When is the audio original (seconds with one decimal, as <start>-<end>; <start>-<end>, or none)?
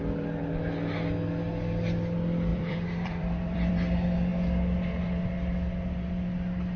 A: 0.0-2.5; 3.7-6.8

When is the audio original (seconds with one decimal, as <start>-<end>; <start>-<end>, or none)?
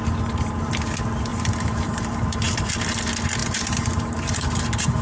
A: 0.0-1.3; 2.7-3.4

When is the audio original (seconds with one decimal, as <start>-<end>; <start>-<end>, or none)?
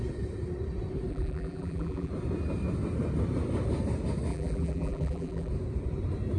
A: 0.0-1.1; 2.1-4.3; 5.5-6.4